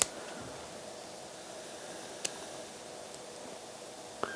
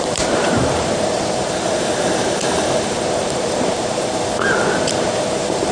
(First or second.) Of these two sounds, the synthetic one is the second